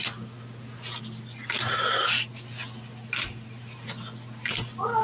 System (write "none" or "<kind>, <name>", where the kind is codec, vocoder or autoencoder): none